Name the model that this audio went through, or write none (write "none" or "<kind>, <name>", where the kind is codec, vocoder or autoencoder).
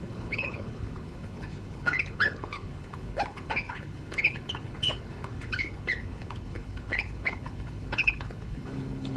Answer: codec, HILCodec